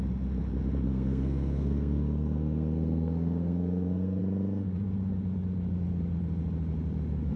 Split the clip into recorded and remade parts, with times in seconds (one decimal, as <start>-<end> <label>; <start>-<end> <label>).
0.0-0.9 recorded; 0.9-4.2 remade; 4.2-7.4 recorded